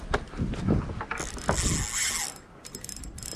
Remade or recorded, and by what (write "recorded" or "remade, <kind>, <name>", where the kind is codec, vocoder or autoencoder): recorded